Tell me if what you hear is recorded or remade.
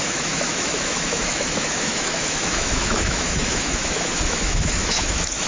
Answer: remade